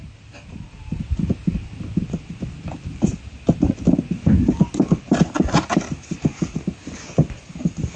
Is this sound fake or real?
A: real